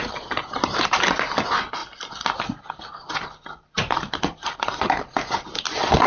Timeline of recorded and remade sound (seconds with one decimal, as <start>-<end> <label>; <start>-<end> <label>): 0.0-6.1 remade